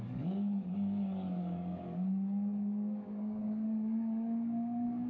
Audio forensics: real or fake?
fake